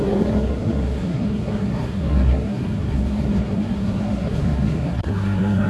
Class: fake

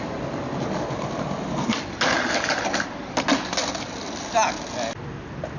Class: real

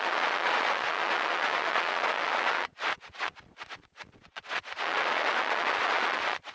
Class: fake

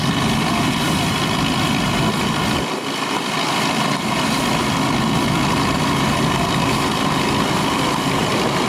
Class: real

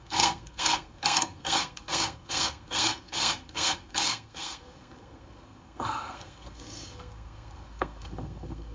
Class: fake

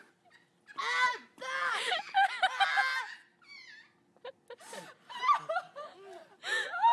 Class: real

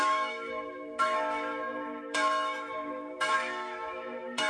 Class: fake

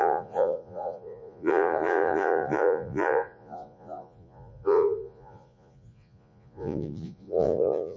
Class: fake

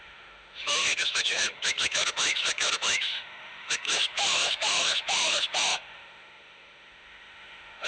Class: fake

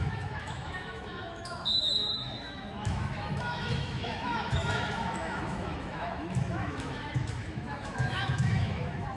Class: fake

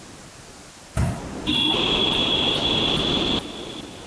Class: real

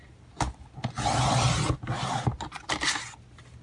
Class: real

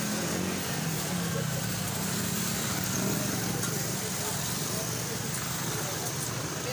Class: real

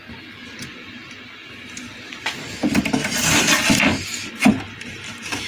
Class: real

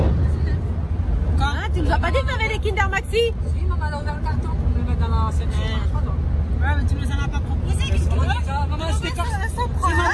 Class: real